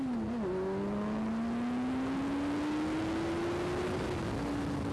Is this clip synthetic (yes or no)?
no